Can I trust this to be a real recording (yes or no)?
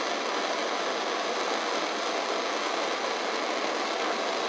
yes